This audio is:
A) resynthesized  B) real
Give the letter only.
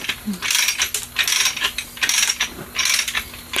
B